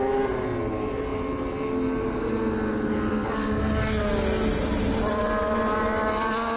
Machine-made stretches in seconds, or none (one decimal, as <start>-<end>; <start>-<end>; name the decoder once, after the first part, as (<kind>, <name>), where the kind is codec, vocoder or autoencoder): none